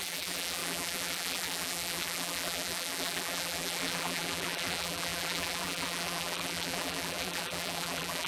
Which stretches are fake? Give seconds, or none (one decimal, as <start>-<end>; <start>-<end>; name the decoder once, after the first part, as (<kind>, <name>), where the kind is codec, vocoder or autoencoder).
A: 0.0-8.3 (vocoder, BigVGAN v2)